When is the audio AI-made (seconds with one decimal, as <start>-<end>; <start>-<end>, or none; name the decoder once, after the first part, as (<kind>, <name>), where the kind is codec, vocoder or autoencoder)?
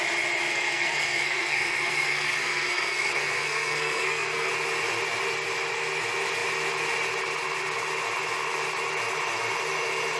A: 0.5-4.5 (codec, SNAC)